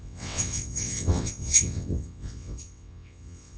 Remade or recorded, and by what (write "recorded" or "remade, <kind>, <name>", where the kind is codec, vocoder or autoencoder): remade, vocoder, WaveNeXt